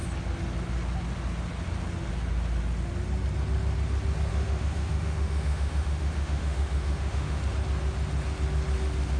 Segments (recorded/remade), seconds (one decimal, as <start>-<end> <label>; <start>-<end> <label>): 0.0-4.3 recorded; 4.3-7.4 remade; 7.4-9.2 recorded